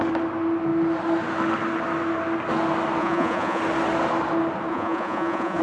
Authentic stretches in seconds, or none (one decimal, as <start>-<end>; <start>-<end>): 0.0-3.0; 3.6-4.7